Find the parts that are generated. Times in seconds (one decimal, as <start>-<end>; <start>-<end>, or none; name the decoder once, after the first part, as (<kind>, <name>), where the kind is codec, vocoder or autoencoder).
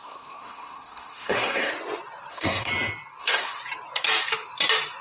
0.0-1.7 (codec, SNAC); 2.3-2.7; 3.2-3.6